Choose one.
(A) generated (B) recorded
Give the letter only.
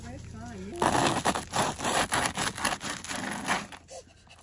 B